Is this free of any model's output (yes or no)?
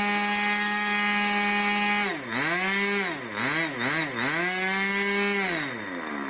yes